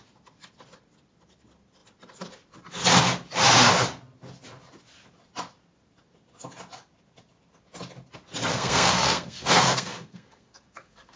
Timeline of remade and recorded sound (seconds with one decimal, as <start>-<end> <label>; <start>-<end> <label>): 0.0-8.5 recorded; 8.5-11.2 remade